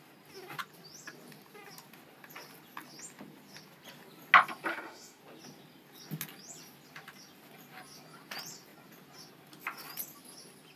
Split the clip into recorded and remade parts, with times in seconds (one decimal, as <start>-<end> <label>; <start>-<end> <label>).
0.0-4.7 recorded; 4.7-5.2 remade; 5.2-10.8 recorded